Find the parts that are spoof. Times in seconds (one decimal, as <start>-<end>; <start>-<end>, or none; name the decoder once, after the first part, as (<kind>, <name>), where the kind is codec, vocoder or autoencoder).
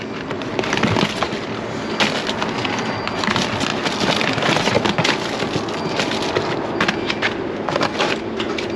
none